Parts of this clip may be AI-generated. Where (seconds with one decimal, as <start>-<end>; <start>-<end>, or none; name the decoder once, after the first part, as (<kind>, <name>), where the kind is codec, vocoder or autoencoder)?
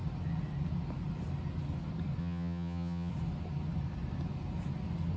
2.2-3.1 (vocoder, HiFi-GAN)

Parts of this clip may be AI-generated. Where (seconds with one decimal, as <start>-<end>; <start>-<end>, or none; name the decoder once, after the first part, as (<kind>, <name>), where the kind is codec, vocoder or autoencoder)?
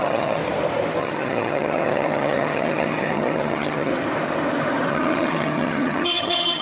0.0-0.4 (vocoder, HiFi-GAN); 1.0-3.9; 4.9-6.6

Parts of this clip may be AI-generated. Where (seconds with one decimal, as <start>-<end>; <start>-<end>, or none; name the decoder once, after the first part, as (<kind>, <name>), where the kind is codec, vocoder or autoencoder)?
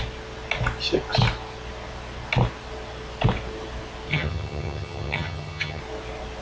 4.1-5.8 (vocoder, HiFi-GAN)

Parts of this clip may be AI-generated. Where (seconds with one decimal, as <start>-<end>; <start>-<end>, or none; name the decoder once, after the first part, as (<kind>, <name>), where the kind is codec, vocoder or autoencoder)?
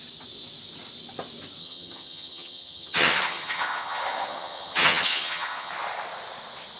1.6-5.7 (vocoder, HiFi-GAN)